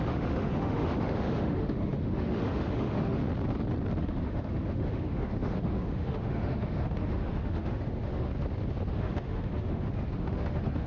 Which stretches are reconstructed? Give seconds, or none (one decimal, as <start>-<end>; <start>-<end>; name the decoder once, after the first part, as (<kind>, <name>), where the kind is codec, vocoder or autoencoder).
0.0-3.2 (autoencoder, DAC-VAE); 4.0-8.3; 8.9-10.9